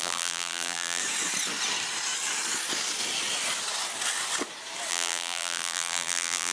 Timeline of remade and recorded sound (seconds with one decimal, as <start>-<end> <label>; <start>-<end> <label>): 0.0-1.0 remade; 1.0-4.9 recorded; 4.9-6.5 remade